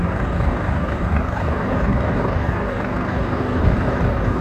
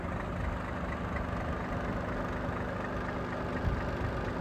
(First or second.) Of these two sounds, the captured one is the second